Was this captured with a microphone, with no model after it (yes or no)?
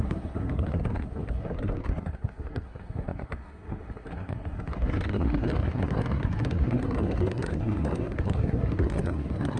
no